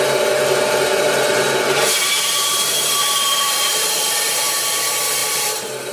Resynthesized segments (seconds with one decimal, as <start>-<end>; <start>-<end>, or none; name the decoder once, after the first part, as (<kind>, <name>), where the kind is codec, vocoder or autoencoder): 0.9-4.4 (vocoder, BigVGAN v2); 5.2-5.9